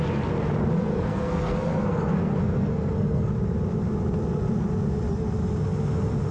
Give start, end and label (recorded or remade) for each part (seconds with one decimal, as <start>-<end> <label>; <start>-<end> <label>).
0.0-0.9 recorded; 0.9-3.3 remade; 3.3-6.3 recorded